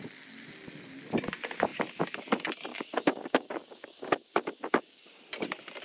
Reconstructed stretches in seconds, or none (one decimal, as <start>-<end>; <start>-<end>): 2.7-5.2